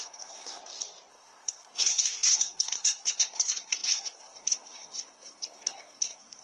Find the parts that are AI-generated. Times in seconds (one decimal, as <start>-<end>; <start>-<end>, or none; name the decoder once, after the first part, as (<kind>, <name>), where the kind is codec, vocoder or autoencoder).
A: 0.0-0.6 (codec, SNAC); 1.1-6.4